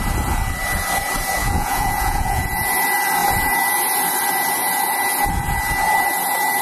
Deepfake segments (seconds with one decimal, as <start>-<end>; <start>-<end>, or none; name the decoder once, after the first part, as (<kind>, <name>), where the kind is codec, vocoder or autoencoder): 1.4-2.4 (vocoder, Vocos)